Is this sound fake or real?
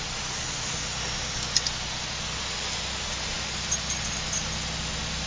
real